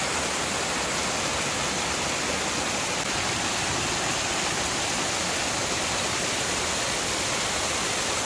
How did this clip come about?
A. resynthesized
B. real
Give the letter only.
B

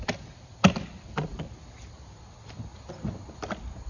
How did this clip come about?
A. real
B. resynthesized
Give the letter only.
A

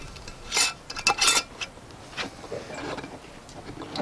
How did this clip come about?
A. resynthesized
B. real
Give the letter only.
B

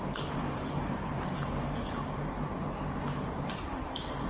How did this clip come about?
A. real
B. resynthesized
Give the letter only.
B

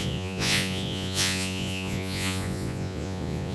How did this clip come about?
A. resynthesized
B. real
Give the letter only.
A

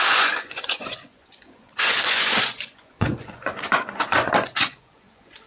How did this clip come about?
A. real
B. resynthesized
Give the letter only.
B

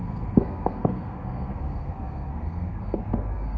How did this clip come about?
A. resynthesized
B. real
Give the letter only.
A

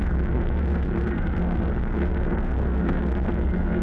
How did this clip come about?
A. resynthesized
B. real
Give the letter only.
A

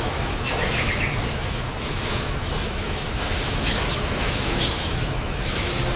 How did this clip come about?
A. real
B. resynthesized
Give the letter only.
B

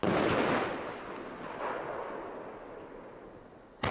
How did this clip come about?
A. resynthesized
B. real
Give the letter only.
B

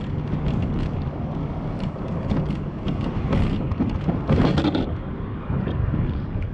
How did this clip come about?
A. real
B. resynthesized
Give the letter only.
B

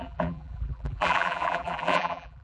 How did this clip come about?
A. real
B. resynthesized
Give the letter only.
B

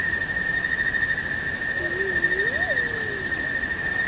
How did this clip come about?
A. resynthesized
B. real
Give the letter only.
B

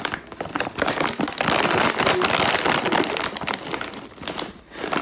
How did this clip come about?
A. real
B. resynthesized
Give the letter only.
A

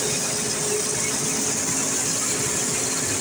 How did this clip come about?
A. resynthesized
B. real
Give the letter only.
B